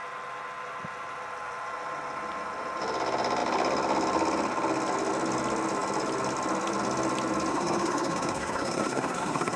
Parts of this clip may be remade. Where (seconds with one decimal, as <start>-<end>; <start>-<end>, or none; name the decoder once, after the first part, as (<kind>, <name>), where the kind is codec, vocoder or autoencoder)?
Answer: 7.5-9.6 (codec, SNAC)